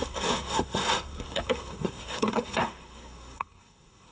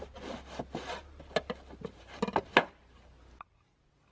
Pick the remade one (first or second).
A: first